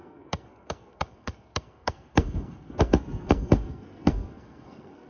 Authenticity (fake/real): fake